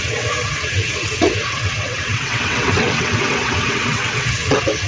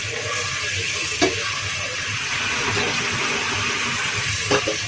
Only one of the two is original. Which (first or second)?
second